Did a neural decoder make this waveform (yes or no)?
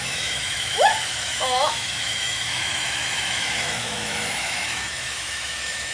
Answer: yes